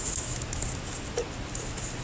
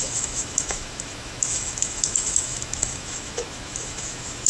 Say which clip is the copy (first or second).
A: second